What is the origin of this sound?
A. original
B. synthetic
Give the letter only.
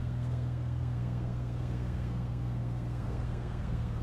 B